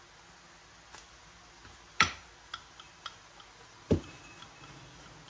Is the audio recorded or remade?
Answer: recorded